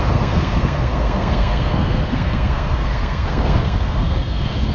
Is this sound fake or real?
fake